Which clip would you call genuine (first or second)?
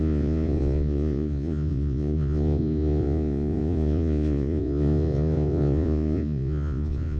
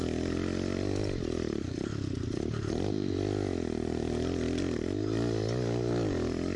second